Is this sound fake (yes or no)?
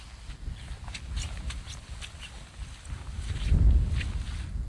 no